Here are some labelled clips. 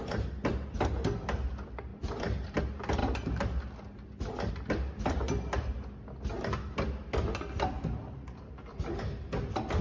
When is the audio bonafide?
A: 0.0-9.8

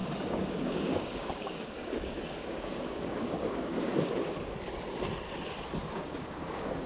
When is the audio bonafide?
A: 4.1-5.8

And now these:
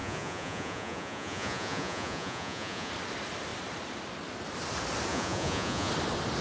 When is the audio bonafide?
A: 2.9-5.1; 5.9-6.4